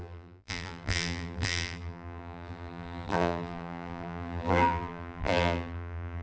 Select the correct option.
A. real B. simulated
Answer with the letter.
B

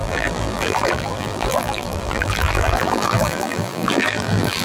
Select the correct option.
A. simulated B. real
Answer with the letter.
A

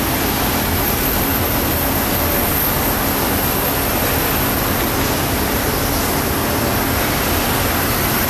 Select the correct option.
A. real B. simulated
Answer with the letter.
A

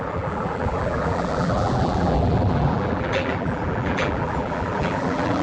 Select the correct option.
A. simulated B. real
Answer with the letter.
A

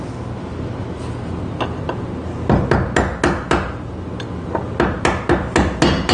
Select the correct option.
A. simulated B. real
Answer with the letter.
B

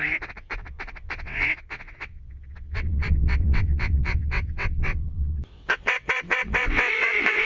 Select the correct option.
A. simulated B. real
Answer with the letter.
A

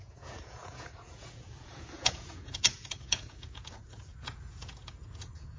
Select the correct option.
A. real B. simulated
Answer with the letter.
B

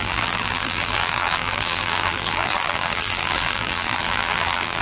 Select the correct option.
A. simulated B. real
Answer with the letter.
A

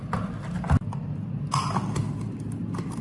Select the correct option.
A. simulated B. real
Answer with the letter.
B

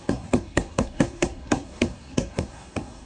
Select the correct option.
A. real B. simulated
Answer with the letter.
B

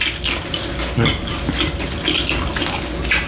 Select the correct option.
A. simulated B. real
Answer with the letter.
B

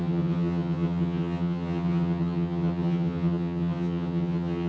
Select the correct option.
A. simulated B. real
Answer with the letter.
A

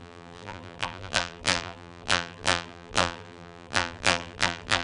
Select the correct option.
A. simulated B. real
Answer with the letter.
A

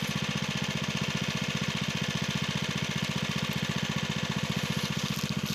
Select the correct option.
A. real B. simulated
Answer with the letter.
A